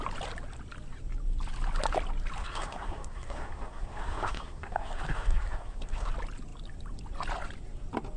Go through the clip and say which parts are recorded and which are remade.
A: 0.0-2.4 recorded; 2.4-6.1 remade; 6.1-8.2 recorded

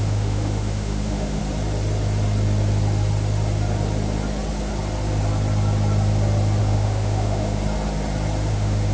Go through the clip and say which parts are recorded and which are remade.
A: 0.0-1.4 remade; 1.4-6.6 recorded; 6.6-7.6 remade; 7.6-8.5 recorded; 8.5-8.9 remade

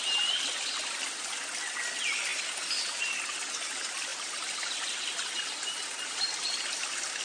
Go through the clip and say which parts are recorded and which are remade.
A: 0.0-7.2 recorded

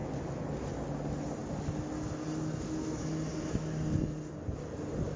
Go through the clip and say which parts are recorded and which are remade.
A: 0.0-5.2 recorded